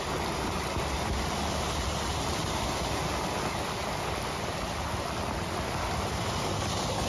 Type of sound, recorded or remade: recorded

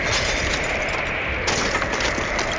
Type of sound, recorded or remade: recorded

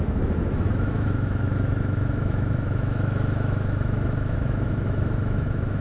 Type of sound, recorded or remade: remade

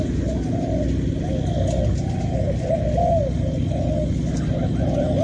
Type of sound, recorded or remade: recorded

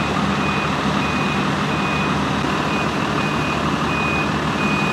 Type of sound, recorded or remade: recorded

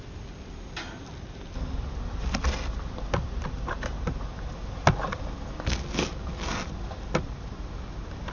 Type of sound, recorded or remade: recorded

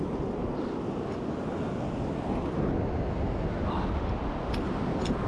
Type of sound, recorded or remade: recorded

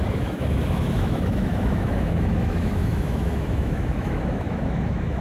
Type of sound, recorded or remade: remade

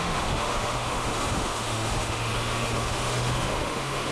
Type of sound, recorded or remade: remade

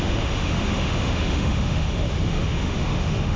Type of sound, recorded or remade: remade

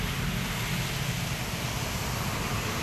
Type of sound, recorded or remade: recorded